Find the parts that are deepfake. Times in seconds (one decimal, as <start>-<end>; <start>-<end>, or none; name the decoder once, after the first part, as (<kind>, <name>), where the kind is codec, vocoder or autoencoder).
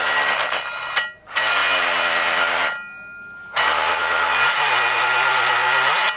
none